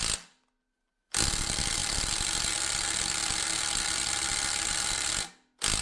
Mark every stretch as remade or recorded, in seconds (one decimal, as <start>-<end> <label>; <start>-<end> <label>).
0.0-1.8 recorded; 1.8-5.3 remade; 5.3-5.8 recorded